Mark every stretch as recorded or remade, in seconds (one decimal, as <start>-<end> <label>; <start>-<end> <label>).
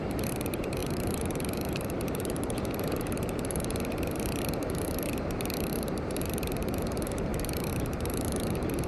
0.0-8.9 remade